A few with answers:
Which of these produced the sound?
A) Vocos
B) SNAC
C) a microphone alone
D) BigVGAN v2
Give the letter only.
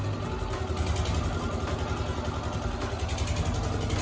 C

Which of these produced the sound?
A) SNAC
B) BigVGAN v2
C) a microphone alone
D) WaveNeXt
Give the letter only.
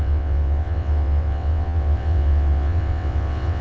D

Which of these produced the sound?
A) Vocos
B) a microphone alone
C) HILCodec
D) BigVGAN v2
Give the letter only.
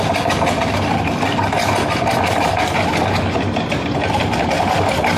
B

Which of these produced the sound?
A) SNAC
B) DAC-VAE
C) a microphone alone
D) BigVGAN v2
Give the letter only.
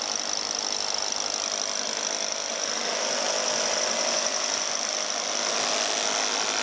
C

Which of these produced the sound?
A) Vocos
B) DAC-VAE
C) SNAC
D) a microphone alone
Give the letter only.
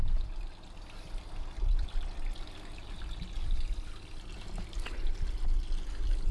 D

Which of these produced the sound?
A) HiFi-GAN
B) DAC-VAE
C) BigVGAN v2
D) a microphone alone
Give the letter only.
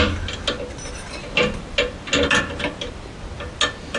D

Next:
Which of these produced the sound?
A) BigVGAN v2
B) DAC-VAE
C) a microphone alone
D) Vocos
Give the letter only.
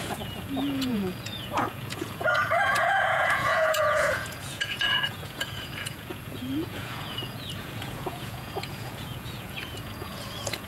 D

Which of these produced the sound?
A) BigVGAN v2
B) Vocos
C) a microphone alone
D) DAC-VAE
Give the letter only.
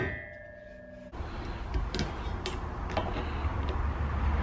C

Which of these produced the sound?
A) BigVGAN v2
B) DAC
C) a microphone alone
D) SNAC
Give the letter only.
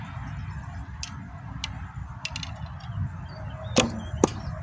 C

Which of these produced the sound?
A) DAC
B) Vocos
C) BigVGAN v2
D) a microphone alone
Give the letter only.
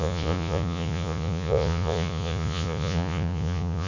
B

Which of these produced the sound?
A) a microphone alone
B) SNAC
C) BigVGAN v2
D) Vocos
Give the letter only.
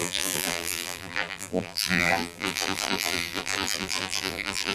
C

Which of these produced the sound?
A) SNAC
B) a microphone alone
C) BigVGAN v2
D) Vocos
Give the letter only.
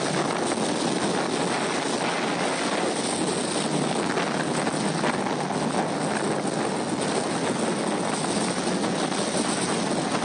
B